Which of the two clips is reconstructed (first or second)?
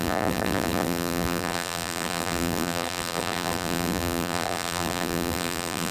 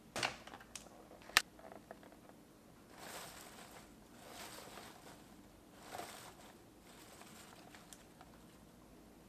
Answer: first